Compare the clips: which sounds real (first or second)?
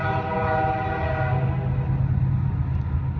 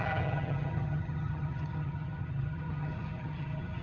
first